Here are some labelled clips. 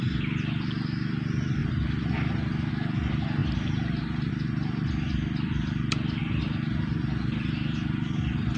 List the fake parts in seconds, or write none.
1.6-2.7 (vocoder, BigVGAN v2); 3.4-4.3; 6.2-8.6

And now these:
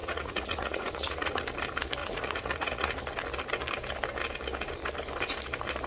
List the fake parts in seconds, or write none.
0.0-1.4 (vocoder, Vocos); 2.0-2.9

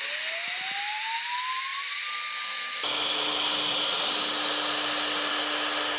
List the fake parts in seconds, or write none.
none